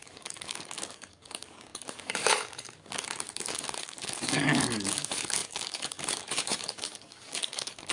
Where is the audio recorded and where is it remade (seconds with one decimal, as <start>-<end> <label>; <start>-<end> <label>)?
0.0-7.9 remade